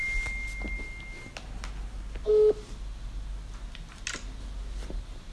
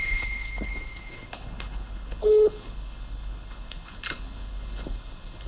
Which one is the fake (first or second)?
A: second